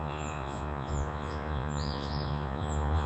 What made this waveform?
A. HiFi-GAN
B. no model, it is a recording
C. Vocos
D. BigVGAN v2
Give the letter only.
C